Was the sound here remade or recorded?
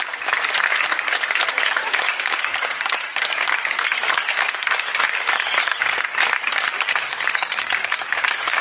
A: remade